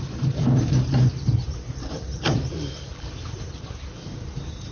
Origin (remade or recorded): remade